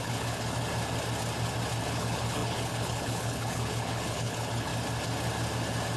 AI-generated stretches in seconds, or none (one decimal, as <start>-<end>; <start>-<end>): 0.0-0.6; 1.8-4.7